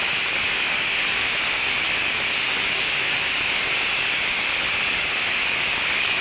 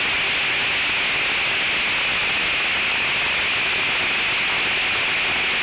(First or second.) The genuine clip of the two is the second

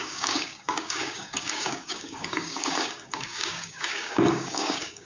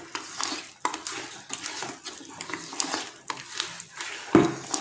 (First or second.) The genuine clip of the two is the second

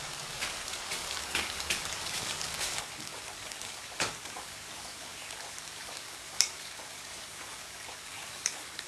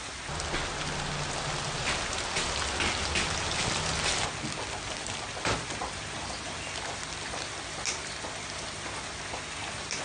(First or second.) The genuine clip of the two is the second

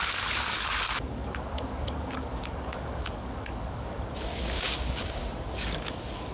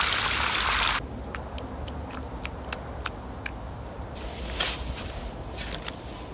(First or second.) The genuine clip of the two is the second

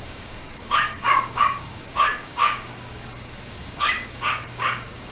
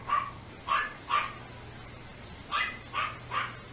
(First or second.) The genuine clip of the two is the second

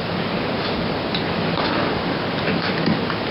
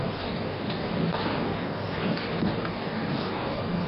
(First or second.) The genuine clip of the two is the first